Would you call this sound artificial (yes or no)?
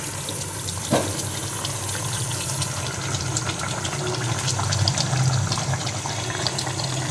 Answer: no